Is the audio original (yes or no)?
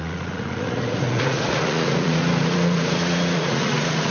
no